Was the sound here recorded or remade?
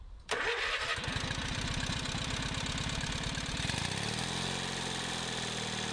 recorded